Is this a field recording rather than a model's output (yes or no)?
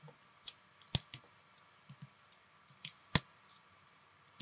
yes